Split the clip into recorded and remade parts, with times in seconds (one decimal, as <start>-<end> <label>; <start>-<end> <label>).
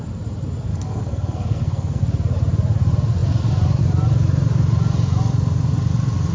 0.0-0.7 recorded; 0.7-2.0 remade; 2.0-6.3 recorded